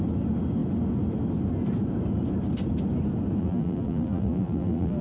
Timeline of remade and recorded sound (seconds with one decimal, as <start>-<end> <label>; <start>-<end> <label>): 0.0-3.4 recorded; 3.4-5.0 remade